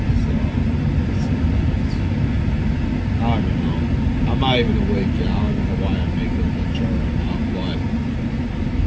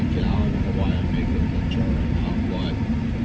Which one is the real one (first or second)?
first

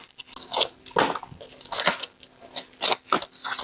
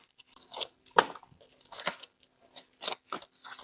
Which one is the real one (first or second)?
first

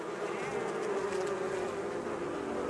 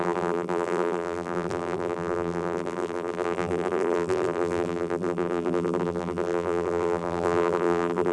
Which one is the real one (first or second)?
first